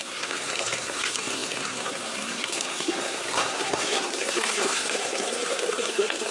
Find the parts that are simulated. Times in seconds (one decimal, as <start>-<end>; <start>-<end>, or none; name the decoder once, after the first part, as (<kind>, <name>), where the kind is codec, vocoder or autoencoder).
0.0-6.3 (codec, SNAC)